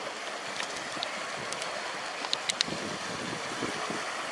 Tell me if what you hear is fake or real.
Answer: real